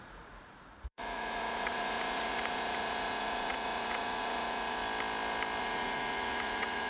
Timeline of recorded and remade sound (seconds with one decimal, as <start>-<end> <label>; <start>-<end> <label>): 0.0-4.8 remade; 4.8-5.6 recorded; 5.6-6.9 remade